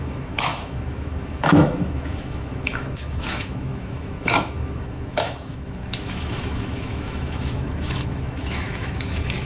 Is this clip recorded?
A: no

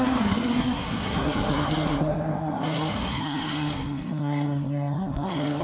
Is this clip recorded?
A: no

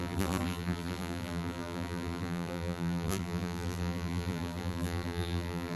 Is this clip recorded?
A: no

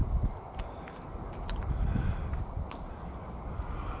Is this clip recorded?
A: yes